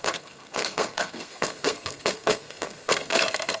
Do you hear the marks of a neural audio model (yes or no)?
yes